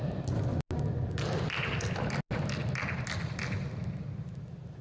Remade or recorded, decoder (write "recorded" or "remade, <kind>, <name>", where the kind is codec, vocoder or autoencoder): recorded